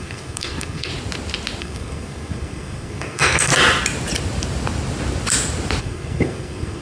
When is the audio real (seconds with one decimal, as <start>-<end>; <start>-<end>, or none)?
0.9-1.6; 3.5-5.8